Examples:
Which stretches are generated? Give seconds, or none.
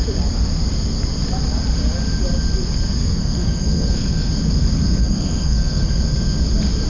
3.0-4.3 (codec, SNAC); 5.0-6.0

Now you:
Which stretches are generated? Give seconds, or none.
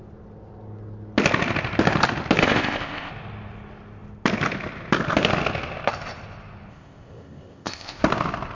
2.4-3.1 (codec, ZipCodec); 6.7-8.0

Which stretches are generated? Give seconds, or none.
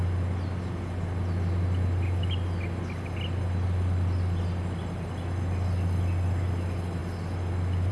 none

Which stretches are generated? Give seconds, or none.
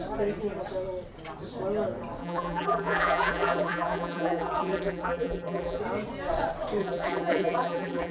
2.2-5.8 (vocoder, BigVGAN v2); 6.8-8.1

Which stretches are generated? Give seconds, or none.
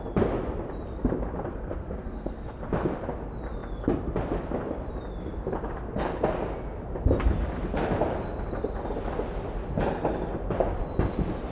1.5-2.6 (codec, SNAC)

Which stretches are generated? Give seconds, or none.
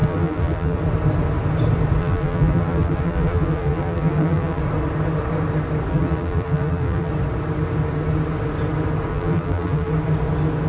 0.0-0.8 (vocoder, BigVGAN v2); 2.0-4.6; 5.9-7.1; 9.1-9.9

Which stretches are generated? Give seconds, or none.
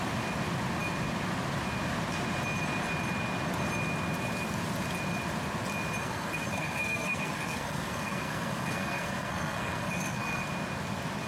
6.0-10.5 (codec, SNAC)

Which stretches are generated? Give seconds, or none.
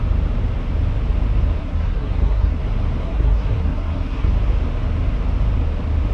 1.6-2.6 (codec, SNAC); 3.0-4.3